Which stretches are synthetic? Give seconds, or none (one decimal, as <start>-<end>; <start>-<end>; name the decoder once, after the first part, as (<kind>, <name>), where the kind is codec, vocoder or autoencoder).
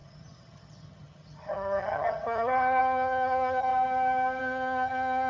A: 0.0-3.7 (vocoder, HiFi-GAN); 4.4-5.3